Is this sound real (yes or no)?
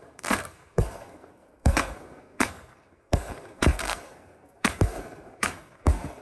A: no